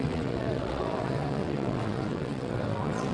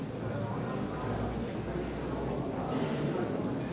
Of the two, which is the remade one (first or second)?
first